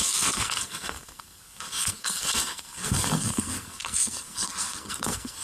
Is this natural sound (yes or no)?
no